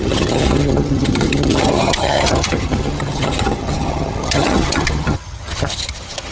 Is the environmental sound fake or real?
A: fake